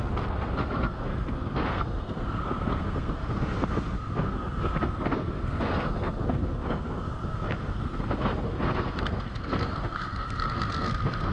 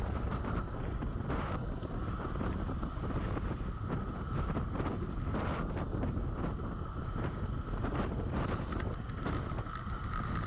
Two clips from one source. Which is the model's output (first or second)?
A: first